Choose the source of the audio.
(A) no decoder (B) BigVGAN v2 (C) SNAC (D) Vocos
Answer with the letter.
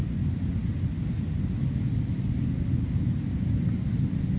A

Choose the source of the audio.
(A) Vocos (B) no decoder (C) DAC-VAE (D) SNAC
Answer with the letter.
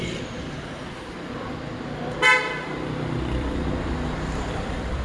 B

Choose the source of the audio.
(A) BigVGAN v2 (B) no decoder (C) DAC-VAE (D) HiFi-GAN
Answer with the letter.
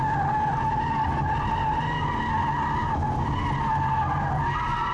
B